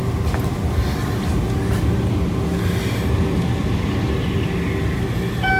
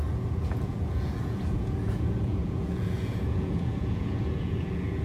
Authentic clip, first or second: first